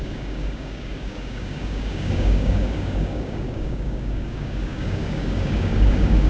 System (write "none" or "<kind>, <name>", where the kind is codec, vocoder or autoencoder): codec, DAC